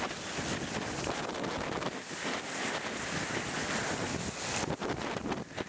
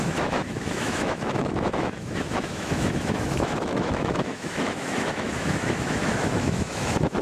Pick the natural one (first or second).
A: first